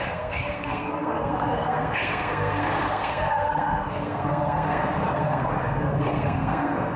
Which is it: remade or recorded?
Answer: remade